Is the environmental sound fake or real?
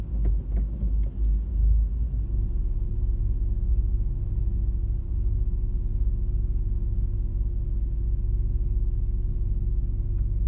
real